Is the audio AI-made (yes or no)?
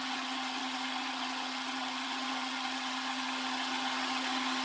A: yes